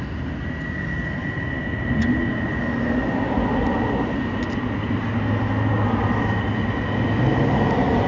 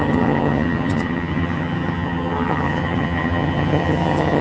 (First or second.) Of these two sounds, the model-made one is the second